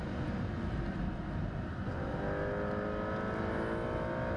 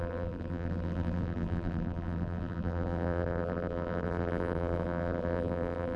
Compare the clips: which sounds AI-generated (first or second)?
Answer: second